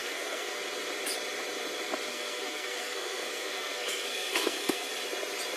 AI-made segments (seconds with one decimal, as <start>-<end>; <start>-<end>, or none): 0.0-0.6; 2.1-4.9